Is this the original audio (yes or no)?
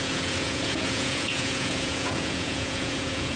no